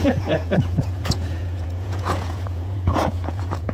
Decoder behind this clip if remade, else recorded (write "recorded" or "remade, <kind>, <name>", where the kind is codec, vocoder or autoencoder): remade, vocoder, Vocos